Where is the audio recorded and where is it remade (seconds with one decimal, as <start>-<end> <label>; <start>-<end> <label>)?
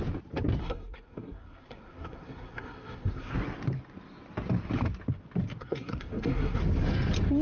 0.0-0.6 recorded; 0.6-3.3 remade; 3.3-5.6 recorded; 5.6-6.6 remade; 6.6-7.4 recorded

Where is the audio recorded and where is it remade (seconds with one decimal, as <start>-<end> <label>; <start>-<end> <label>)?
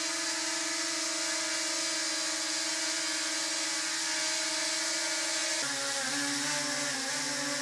0.0-7.6 recorded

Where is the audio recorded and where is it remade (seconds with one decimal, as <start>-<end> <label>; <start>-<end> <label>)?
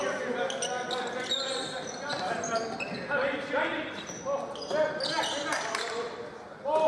0.0-6.9 recorded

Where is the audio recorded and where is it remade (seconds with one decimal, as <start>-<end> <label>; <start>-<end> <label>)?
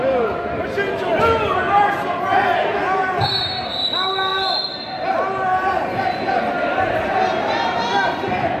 0.0-8.6 recorded